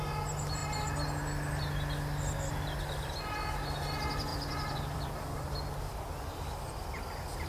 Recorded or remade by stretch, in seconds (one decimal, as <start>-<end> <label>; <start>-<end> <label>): 0.0-4.3 recorded; 4.3-6.6 remade; 6.6-7.5 recorded